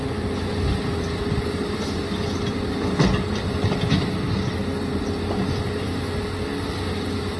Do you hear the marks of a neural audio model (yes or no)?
no